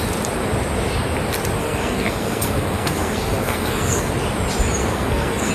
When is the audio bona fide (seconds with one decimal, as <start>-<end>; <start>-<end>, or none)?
0.0-1.6; 4.1-4.8